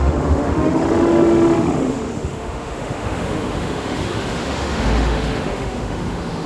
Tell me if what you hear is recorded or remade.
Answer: remade